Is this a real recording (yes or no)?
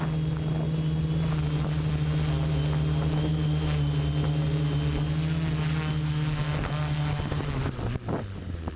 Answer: yes